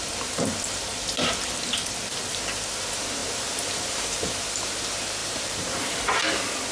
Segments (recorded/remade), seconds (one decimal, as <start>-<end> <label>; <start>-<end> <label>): 0.0-5.2 recorded; 5.2-6.0 remade; 6.0-6.7 recorded